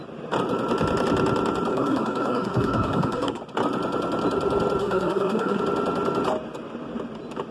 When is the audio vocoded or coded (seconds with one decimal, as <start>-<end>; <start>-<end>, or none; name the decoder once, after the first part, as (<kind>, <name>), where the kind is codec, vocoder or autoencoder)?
1.7-3.4 (codec, SNAC); 4.8-5.6